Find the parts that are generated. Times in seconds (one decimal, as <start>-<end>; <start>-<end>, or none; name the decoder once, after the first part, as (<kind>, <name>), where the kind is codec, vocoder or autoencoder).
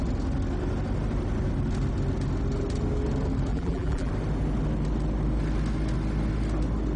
3.5-4.1 (vocoder, BigVGAN v2)